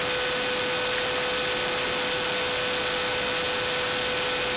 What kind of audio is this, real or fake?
real